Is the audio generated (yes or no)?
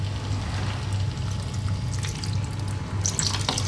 no